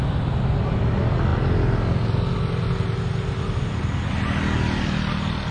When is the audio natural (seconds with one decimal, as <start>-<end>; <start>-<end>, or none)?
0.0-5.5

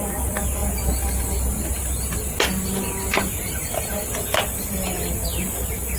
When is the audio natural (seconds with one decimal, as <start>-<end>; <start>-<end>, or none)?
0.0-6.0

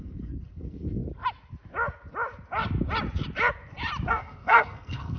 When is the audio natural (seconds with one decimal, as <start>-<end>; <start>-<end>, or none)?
1.0-4.1